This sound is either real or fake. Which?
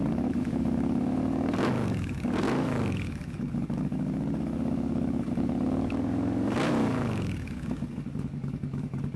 fake